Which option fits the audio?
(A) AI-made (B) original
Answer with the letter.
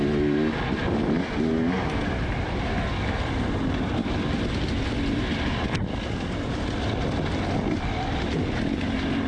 B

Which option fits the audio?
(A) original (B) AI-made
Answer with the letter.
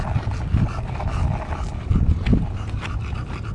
A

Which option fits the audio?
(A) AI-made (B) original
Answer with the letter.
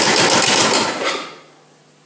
B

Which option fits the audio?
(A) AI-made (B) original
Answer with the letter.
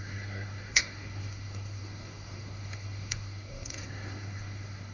A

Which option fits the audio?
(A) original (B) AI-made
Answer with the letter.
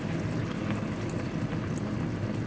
A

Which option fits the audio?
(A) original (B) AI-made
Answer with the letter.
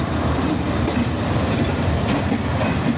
A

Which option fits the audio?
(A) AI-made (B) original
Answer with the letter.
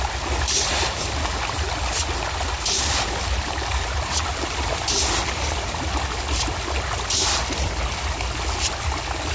B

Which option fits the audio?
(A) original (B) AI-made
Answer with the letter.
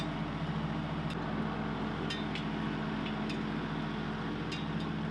A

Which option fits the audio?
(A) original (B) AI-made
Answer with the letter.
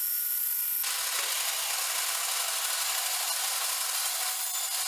A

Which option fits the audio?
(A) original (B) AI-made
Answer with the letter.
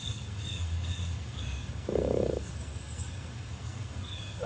B